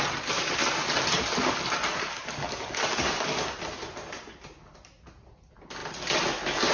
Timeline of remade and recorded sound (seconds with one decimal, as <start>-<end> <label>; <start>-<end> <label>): 0.0-1.9 recorded; 1.9-3.6 remade; 3.6-6.7 recorded